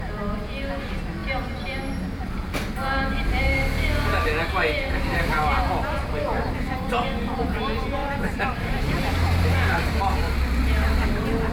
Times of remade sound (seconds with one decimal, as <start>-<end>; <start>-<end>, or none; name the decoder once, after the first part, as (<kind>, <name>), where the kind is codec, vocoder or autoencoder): 8.0-9.0 (vocoder, BigVGAN v2)